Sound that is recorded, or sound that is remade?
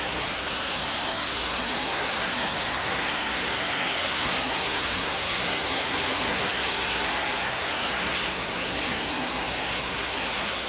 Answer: remade